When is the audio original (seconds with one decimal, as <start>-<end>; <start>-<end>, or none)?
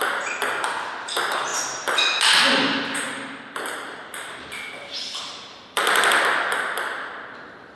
0.0-7.8